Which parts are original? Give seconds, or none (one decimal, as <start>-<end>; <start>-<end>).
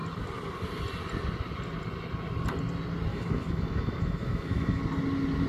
0.0-3.1; 4.8-5.5